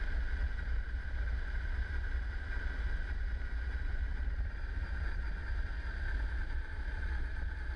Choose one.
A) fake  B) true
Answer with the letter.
B